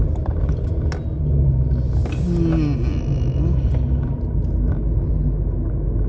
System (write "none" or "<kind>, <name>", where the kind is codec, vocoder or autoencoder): none